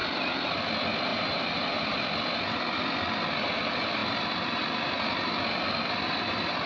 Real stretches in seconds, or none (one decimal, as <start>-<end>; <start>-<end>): 0.6-1.1; 2.1-6.7